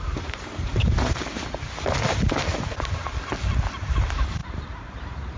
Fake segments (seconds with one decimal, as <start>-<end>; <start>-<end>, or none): 0.0-0.7; 3.9-5.4